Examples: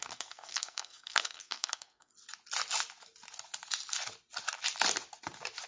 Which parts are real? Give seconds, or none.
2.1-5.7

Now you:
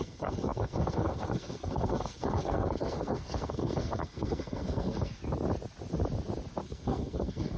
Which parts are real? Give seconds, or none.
5.2-6.6

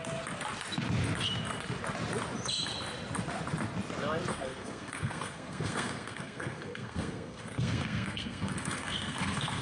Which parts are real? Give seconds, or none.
0.0-4.3

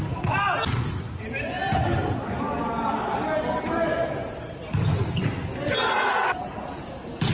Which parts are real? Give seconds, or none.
0.0-7.3

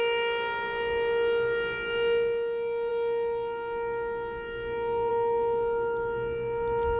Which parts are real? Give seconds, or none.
0.0-7.0

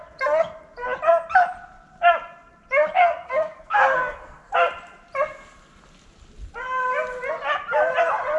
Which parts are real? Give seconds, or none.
0.0-3.0; 4.5-8.4

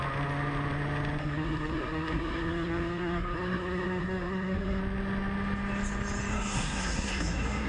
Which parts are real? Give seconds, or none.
0.0-1.2; 4.8-6.3